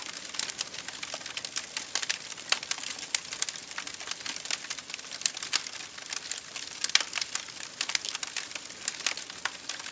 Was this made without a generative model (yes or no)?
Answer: yes